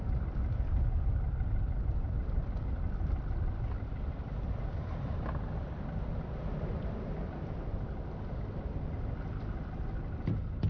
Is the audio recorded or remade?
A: recorded